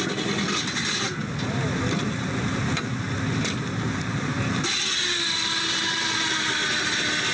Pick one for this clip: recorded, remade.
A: recorded